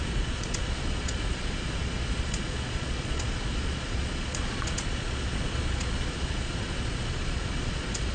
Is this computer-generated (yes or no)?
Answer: yes